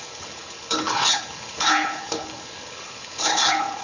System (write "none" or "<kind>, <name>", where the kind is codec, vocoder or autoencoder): codec, HILCodec